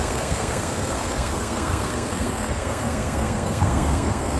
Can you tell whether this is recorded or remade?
remade